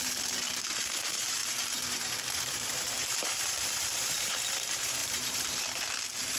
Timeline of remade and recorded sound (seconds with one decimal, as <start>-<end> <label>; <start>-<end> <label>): 0.0-6.4 remade